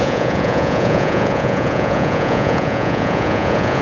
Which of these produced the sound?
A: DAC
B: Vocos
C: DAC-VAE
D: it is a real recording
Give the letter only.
B